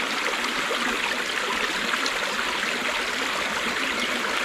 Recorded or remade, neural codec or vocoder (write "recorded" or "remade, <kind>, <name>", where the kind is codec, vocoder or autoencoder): recorded